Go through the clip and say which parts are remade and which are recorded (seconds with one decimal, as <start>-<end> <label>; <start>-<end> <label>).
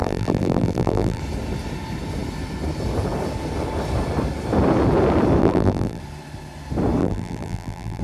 0.0-1.2 remade; 1.2-5.4 recorded; 5.4-6.0 remade; 6.0-7.0 recorded; 7.0-8.0 remade